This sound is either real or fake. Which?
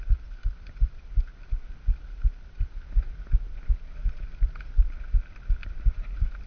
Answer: real